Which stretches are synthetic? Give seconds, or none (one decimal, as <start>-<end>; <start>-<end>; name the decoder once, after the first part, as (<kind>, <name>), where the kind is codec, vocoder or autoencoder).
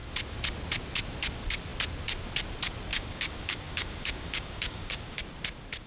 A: 2.9-5.2 (codec, DAC)